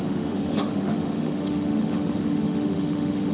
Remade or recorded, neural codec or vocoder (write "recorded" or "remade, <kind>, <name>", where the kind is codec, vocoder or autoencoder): remade, autoencoder, DAC-VAE